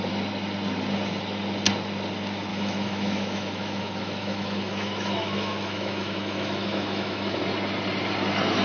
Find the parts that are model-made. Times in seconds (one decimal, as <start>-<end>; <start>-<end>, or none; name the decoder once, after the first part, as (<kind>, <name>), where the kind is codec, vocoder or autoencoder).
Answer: 2.5-7.4 (autoencoder, DAC-VAE)